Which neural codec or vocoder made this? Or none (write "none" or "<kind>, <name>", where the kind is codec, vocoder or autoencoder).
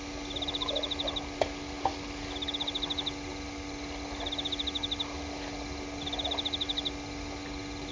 none